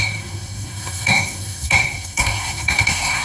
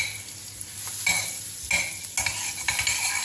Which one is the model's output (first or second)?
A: first